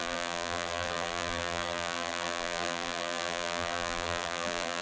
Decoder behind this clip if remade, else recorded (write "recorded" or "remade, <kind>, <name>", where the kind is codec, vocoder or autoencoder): remade, vocoder, BigVGAN v2